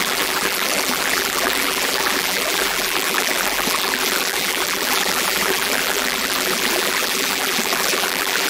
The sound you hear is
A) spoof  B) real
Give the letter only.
A